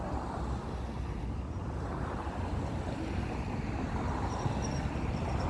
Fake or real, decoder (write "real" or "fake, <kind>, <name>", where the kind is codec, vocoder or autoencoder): real